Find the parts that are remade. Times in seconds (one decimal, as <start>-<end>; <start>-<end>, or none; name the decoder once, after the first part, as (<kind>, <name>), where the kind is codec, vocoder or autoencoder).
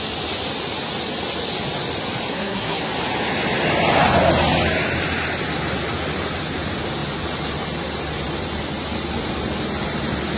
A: 2.3-2.8 (codec, SNAC)